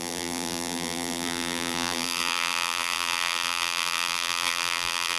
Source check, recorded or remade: remade